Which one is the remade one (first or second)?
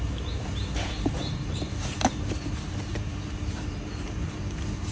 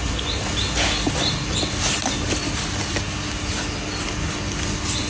first